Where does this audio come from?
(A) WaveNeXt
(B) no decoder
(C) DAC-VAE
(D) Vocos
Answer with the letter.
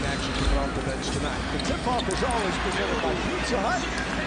B